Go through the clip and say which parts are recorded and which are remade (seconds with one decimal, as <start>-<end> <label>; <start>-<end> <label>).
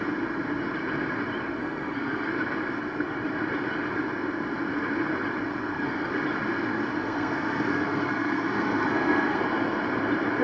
0.0-1.6 recorded; 1.6-2.3 remade; 2.3-5.6 recorded; 5.6-6.1 remade; 6.1-6.9 recorded; 6.9-9.4 remade; 9.4-10.4 recorded